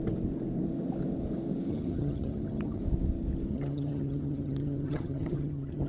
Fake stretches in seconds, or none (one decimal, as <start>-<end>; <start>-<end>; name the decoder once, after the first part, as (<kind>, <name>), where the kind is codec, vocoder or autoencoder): 1.7-2.8 (vocoder, HiFi-GAN); 3.5-5.9